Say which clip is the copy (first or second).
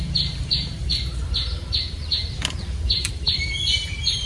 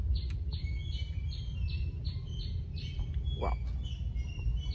first